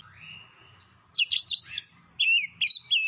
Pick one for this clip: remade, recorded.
recorded